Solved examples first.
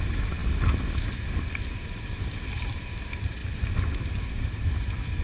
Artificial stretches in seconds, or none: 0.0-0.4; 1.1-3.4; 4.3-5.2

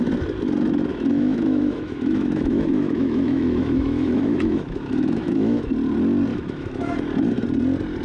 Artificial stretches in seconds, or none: 0.9-5.7; 6.3-6.9

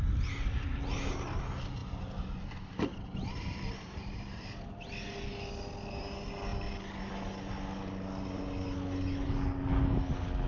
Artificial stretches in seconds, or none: 1.8-4.7